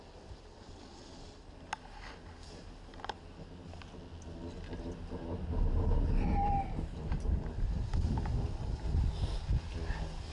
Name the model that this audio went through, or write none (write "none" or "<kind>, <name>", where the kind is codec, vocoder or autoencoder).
none